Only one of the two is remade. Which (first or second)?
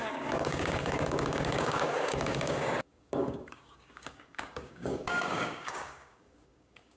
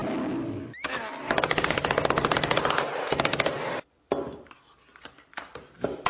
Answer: first